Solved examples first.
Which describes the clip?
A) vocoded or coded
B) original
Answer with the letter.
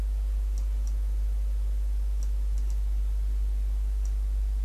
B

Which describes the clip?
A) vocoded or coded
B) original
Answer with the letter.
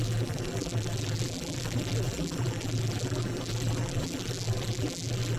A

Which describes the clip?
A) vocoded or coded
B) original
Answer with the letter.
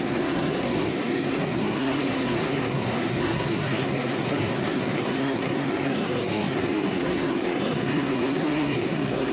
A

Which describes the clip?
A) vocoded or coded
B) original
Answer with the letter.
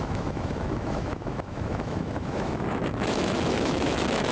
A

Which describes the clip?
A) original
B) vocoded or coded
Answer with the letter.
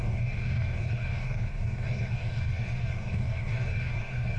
B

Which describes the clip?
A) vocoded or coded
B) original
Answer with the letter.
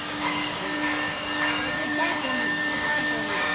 A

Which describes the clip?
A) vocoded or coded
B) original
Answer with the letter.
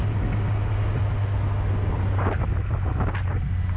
B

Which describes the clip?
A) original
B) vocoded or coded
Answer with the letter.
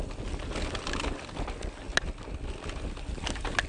A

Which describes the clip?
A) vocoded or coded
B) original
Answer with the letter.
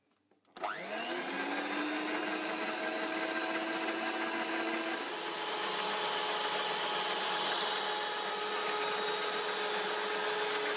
B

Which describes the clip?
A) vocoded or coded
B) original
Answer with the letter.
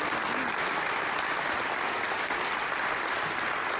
B